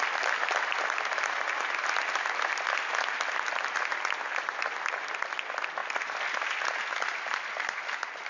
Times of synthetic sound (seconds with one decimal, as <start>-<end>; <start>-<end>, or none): none